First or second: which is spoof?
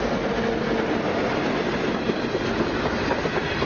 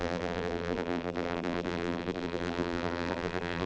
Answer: second